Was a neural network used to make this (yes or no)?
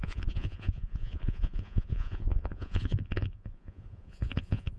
yes